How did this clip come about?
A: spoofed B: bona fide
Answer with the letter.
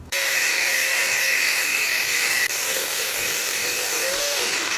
A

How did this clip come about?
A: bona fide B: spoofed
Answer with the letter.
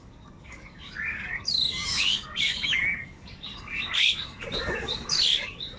B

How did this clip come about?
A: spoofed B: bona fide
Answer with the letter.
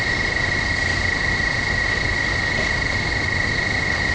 B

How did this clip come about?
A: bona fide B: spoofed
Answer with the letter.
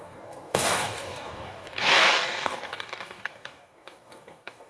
B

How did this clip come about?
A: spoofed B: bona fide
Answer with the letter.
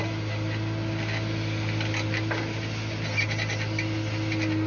B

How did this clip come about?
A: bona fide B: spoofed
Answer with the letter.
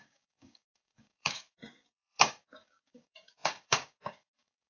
B